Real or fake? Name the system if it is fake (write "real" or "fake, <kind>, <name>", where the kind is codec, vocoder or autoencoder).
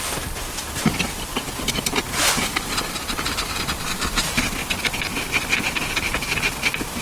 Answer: real